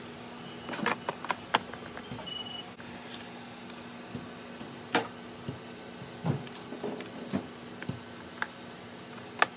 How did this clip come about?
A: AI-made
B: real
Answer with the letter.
B